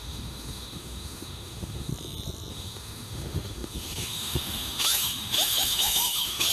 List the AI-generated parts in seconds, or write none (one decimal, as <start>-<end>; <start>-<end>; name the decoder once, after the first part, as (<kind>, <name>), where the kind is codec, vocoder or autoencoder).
0.0-1.9 (autoencoder, DAC-VAE); 2.5-6.5